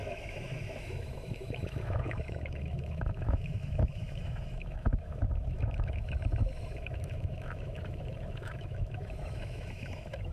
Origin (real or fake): fake